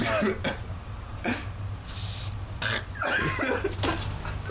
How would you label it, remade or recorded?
recorded